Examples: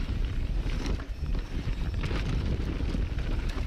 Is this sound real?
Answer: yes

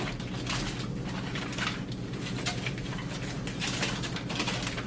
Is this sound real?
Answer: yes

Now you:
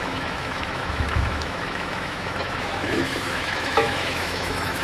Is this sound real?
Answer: no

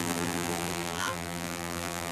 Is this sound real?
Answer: no